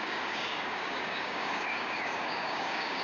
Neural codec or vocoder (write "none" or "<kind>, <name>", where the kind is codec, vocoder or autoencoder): codec, DAC